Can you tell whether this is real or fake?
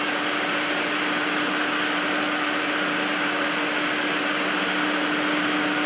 real